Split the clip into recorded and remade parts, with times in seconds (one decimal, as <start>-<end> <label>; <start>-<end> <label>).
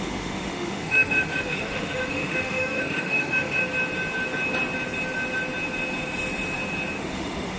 0.0-3.6 remade; 3.6-7.0 recorded; 7.0-7.6 remade